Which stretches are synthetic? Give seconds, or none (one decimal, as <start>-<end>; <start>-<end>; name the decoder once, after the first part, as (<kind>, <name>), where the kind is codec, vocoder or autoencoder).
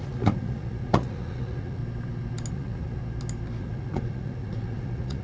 0.0-1.8 (vocoder, Vocos); 2.5-3.0; 3.6-5.2